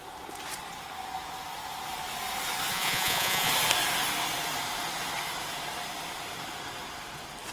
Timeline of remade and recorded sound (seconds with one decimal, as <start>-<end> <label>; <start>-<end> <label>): 0.0-2.7 recorded; 2.7-3.5 remade; 3.5-7.5 recorded